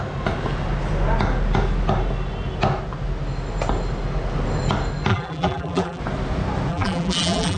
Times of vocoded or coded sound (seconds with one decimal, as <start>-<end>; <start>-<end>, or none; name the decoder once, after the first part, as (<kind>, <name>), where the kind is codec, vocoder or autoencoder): 5.1-6.0 (vocoder, BigVGAN v2); 6.7-7.6